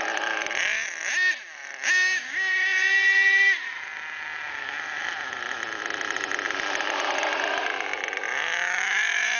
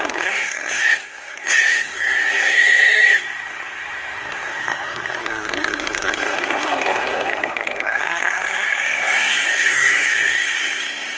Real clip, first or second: first